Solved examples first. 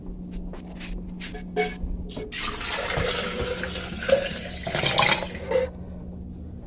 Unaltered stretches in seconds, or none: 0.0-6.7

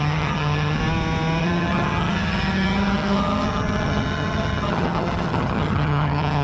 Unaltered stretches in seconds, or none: 0.8-1.4

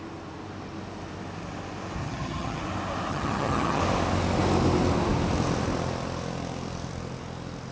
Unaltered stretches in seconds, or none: 0.0-2.0; 2.6-3.1; 3.8-7.7

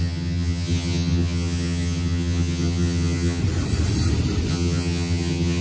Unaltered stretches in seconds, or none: 3.4-4.5

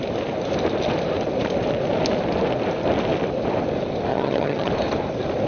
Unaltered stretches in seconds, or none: 0.0-4.1; 4.7-5.5